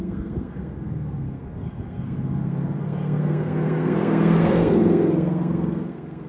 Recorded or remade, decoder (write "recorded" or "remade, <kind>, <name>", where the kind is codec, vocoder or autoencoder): remade, codec, SNAC